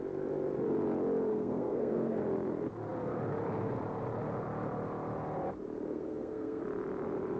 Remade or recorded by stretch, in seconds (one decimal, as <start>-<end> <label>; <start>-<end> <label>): 0.0-1.3 recorded; 1.3-2.2 remade; 2.2-5.9 recorded; 5.9-6.6 remade; 6.6-7.4 recorded

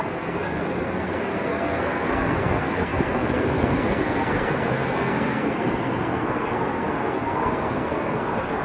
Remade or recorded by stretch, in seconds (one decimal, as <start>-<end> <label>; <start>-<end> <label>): 0.0-8.6 remade

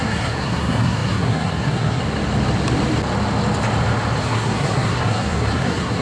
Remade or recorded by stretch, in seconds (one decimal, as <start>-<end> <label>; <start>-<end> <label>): 0.0-2.0 remade; 2.0-4.2 recorded; 4.2-6.0 remade

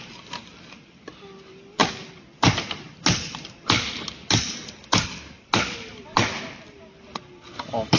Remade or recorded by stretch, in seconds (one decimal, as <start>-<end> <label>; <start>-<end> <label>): 0.0-8.0 recorded